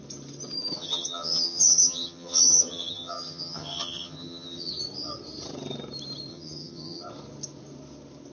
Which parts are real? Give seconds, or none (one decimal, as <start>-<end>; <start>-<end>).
0.0-0.8; 4.7-6.3; 7.0-8.3